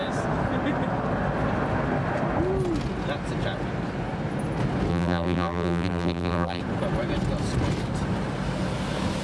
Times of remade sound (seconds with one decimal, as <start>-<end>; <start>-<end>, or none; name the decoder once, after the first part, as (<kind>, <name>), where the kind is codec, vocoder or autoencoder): 4.9-6.6 (vocoder, BigVGAN v2)